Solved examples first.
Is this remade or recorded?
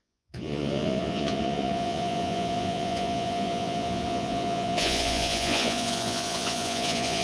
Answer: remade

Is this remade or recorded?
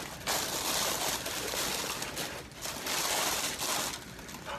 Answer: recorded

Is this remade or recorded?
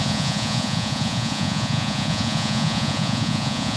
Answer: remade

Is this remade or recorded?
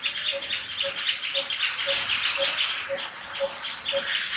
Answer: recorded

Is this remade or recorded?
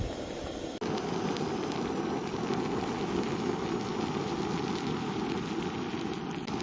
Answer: recorded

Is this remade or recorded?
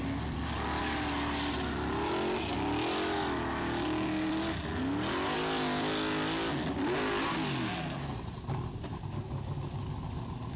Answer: recorded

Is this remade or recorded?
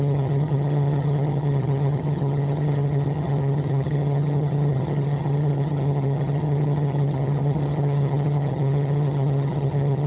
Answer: remade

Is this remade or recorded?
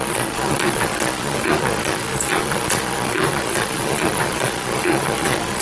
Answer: remade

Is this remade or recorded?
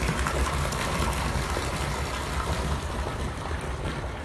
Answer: remade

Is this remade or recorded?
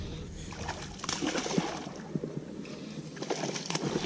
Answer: remade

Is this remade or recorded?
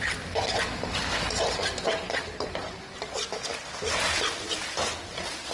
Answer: recorded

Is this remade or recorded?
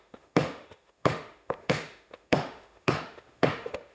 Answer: remade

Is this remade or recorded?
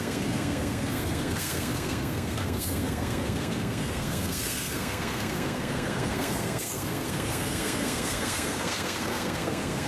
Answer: remade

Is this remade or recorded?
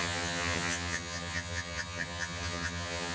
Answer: remade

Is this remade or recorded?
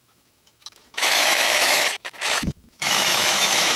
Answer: remade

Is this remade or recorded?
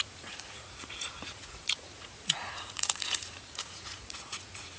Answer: remade